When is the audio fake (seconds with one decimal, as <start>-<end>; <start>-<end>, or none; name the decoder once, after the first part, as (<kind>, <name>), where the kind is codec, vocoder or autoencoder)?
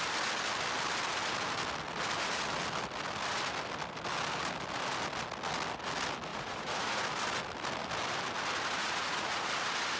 6.3-7.0 (vocoder, Vocos); 8.8-9.5